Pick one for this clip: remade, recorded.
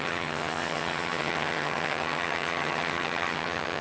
remade